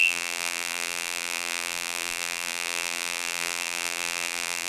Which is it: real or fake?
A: fake